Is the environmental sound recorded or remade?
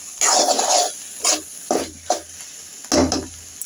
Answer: recorded